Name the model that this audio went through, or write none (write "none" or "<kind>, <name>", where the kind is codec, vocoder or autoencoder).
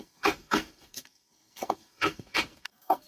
codec, SNAC